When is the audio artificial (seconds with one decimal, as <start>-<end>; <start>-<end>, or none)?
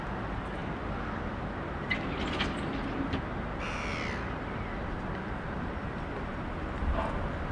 none